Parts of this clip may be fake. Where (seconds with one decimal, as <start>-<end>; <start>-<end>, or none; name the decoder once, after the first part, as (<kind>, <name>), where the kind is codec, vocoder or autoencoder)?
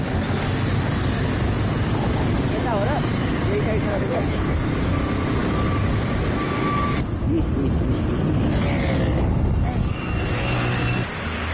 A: 3.9-4.7 (codec, HILCodec)